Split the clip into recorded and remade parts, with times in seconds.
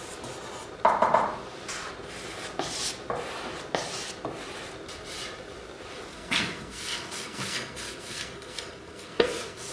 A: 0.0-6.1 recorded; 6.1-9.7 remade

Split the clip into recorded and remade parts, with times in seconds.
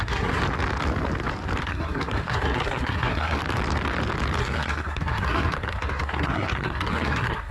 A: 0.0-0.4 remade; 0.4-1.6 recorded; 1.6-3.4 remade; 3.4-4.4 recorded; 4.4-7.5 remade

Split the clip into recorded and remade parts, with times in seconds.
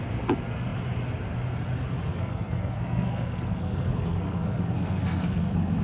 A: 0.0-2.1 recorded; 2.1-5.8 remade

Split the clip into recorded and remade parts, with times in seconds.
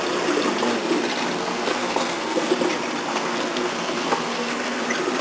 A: 0.0-1.4 recorded; 1.4-2.5 remade; 2.5-3.1 recorded; 3.1-4.8 remade; 4.8-5.2 recorded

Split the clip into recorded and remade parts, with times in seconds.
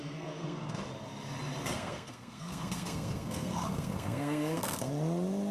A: 0.0-0.8 remade; 0.8-1.6 recorded; 1.6-4.9 remade; 4.9-5.5 recorded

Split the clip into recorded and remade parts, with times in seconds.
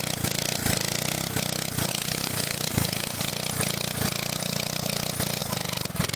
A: 0.0-1.9 recorded; 1.9-3.3 remade; 3.3-6.2 recorded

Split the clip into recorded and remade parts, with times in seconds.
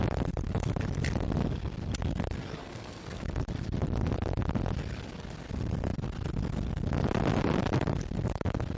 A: 0.0-2.6 recorded; 2.6-3.2 remade; 3.2-8.8 recorded